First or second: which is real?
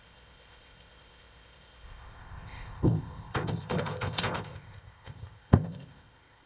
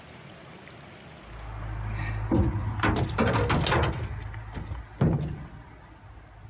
second